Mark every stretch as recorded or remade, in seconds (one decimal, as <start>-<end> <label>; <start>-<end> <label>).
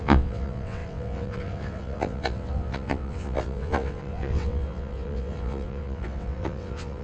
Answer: 0.0-7.0 remade